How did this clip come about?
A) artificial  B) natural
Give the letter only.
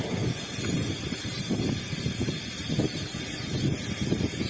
B